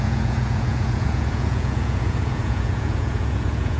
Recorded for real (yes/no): no